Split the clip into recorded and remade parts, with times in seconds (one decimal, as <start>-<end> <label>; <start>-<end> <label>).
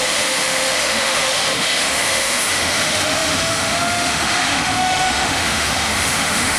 0.0-6.6 remade